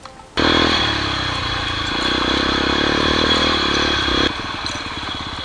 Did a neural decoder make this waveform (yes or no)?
no